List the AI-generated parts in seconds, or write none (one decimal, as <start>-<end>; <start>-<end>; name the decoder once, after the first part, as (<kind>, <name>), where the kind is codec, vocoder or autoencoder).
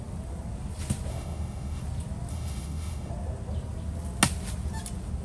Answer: 1.1-1.8 (autoencoder, DAC-VAE); 2.3-3.1